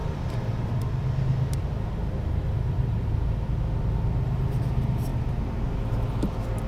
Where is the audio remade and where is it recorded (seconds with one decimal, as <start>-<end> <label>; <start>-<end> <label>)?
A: 0.0-0.8 remade; 0.8-1.6 recorded; 1.6-3.1 remade; 3.1-6.7 recorded